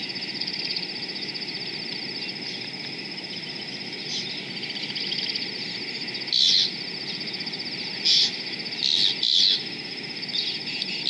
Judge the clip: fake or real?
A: real